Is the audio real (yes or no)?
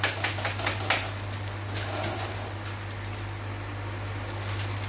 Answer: yes